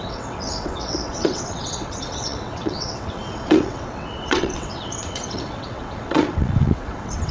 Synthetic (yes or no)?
yes